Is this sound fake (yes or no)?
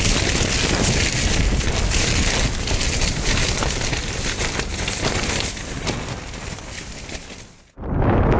no